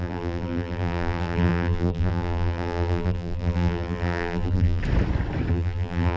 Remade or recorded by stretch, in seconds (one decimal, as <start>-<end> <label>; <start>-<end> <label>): 0.0-4.8 remade; 4.8-5.5 recorded; 5.5-6.2 remade